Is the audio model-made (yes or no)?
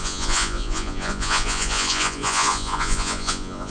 yes